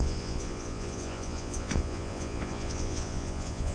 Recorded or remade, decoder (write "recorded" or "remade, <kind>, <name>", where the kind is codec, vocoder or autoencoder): remade, vocoder, Vocos